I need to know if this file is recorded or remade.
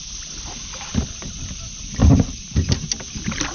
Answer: recorded